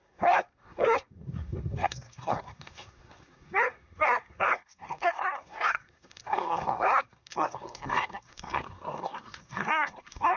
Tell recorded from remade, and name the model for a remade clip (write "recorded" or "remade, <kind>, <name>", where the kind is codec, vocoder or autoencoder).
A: remade, codec, SNAC